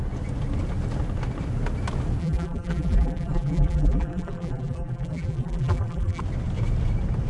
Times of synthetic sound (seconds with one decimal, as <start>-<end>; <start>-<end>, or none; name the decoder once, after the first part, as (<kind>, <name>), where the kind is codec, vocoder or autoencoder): 2.2-6.2 (vocoder, BigVGAN v2)